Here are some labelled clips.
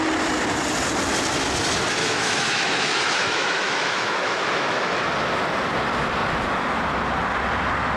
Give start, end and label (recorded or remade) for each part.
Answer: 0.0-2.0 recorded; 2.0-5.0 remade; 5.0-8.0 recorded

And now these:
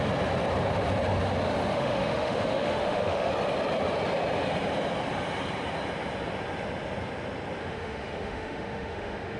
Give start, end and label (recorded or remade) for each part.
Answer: 0.0-1.7 recorded; 1.7-3.3 remade; 3.3-7.6 recorded; 7.6-9.4 remade

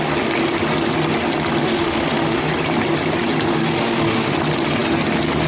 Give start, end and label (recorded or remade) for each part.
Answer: 0.0-1.6 recorded; 1.6-2.5 remade; 2.5-3.5 recorded; 3.5-4.3 remade; 4.3-5.5 recorded

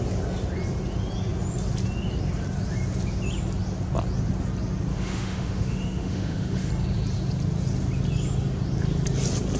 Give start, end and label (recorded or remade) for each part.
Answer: 0.0-4.9 recorded; 4.9-6.7 remade; 6.7-9.6 recorded

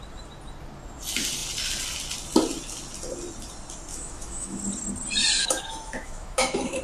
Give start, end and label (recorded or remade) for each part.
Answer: 0.0-3.9 recorded; 3.9-4.6 remade; 4.6-5.4 recorded; 5.4-6.8 remade

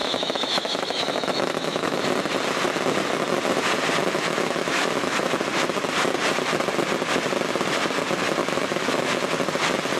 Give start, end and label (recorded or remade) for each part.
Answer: 0.0-2.0 remade; 2.0-4.0 recorded; 4.0-5.3 remade; 5.3-8.4 recorded; 8.4-9.2 remade; 9.2-10.0 recorded